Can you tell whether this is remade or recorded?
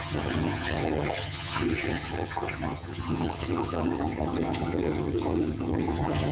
remade